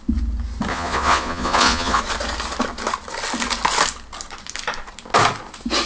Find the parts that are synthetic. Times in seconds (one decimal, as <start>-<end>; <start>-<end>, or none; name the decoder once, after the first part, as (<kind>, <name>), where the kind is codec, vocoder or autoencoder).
0.7-2.0 (vocoder, Vocos)